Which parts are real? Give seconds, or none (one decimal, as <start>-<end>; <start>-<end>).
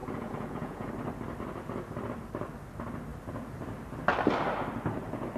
0.9-5.4